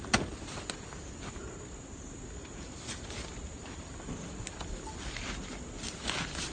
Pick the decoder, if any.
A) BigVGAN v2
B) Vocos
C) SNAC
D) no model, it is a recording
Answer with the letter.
D